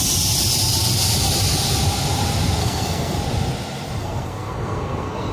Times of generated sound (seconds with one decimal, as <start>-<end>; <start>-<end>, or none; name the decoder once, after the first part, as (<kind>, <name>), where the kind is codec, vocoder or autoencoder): 2.6-3.2 (codec, SNAC); 4.0-5.3